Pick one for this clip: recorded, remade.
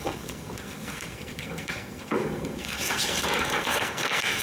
remade